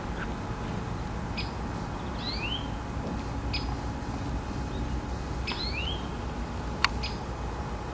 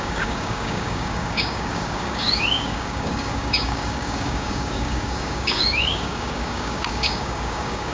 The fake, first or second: second